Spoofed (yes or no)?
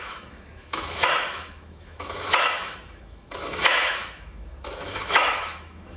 yes